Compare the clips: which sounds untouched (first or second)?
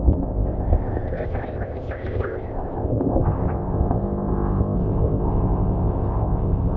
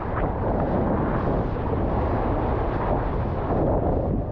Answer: second